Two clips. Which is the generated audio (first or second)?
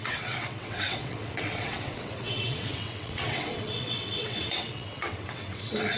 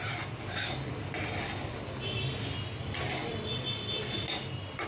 first